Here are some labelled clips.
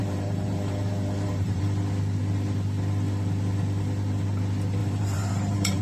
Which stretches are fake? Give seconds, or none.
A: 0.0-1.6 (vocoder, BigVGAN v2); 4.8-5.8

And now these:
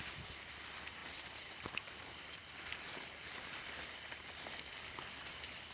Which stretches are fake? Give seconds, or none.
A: 2.4-4.8 (vocoder, BigVGAN v2)

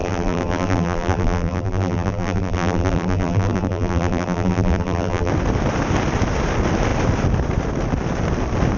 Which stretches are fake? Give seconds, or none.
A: 0.0-5.3 (vocoder, BigVGAN v2)

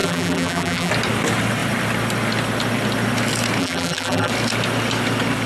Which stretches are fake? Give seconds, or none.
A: 0.0-0.9 (vocoder, BigVGAN v2); 3.6-4.3